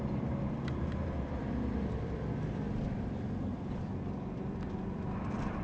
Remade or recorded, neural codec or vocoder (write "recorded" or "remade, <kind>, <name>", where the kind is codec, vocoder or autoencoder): remade, vocoder, BigVGAN v2